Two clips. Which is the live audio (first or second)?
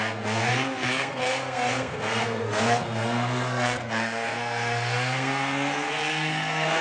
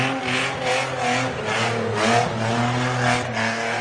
second